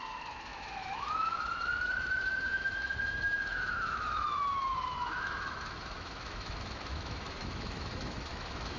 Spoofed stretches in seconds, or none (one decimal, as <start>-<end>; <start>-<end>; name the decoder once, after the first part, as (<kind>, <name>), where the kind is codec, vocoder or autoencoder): 0.0-8.8 (autoencoder, DAC-VAE)